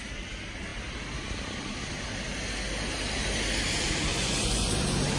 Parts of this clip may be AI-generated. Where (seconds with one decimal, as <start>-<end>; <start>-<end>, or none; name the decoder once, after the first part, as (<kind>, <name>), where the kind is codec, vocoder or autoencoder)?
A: 4.1-4.7 (vocoder, Vocos)